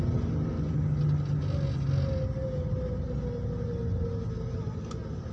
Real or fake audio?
real